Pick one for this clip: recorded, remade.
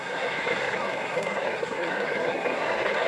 remade